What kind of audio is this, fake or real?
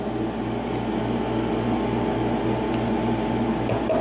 real